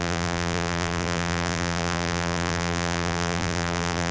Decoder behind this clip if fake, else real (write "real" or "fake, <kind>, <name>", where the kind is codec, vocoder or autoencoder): fake, vocoder, BigVGAN v2